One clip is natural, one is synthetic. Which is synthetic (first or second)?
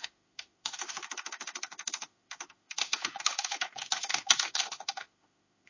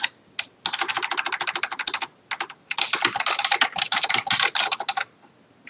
first